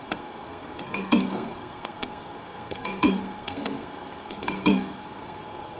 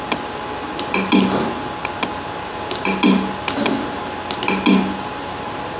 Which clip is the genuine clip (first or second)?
second